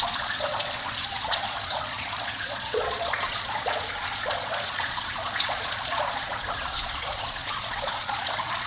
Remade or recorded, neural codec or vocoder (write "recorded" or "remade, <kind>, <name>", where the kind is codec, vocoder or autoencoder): remade, vocoder, Vocos